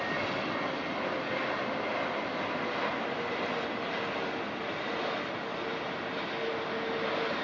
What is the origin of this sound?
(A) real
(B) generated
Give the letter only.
A